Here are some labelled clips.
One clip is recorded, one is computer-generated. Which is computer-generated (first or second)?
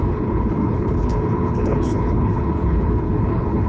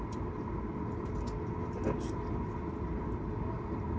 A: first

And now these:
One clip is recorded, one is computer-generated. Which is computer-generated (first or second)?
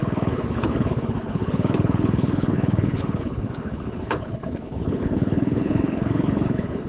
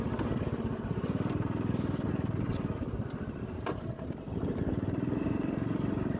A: first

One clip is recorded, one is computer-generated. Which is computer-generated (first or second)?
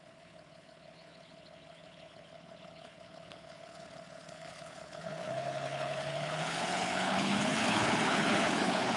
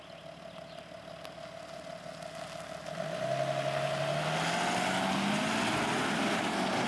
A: first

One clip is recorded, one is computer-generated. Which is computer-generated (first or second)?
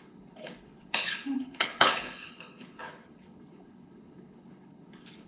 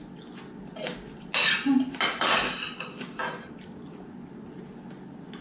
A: first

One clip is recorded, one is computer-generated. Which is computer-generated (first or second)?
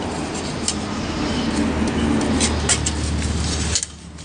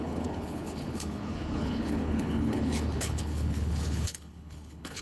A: second